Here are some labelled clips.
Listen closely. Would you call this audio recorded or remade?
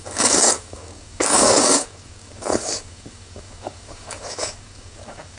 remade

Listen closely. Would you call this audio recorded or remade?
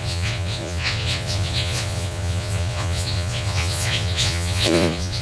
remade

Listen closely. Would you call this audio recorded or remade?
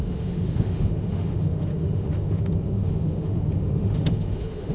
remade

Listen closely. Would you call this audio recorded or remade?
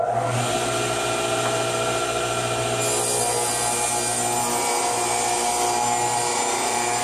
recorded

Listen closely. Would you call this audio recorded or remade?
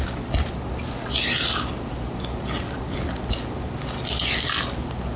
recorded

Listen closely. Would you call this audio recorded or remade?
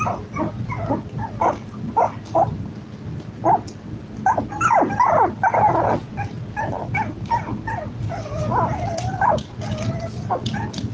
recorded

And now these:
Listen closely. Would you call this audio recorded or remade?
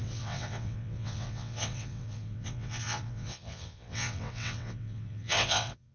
remade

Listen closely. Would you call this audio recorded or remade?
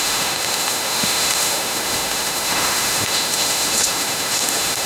remade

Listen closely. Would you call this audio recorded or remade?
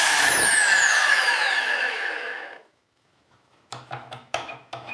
remade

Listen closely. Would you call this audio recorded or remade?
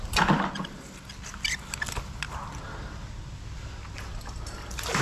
recorded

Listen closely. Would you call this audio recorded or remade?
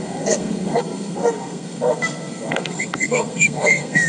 remade